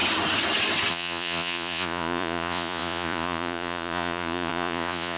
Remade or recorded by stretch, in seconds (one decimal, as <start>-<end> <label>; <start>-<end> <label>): 0.0-0.9 recorded; 0.9-5.2 remade